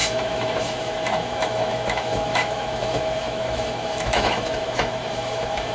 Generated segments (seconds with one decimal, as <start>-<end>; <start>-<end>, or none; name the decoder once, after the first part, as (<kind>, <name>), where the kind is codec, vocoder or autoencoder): 0.0-5.7 (autoencoder, DAC-VAE)